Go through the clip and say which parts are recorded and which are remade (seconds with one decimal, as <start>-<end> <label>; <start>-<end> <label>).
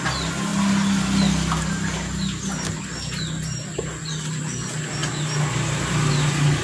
0.0-6.6 recorded